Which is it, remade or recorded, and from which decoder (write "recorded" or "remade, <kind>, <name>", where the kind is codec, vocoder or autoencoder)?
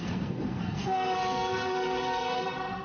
remade, codec, SNAC